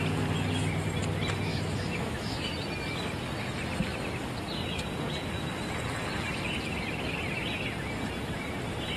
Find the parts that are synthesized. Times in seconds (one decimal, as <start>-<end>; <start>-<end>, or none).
1.5-2.5